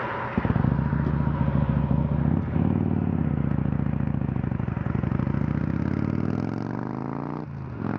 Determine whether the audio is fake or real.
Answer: real